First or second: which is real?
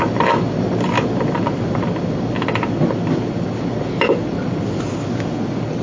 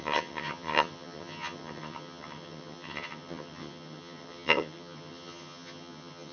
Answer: first